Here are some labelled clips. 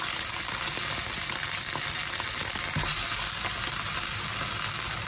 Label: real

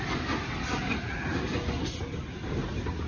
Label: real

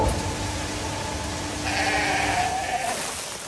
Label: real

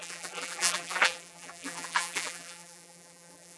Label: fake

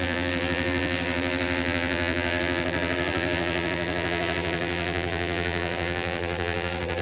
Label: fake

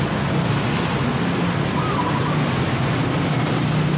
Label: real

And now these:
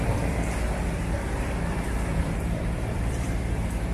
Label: fake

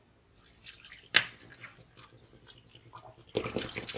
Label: fake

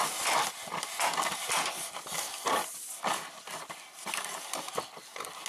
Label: real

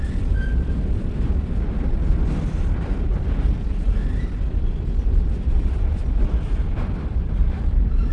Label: fake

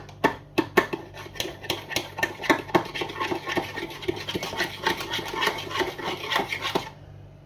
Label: real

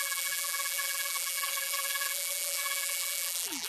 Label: fake